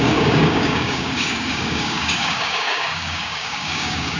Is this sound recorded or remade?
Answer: remade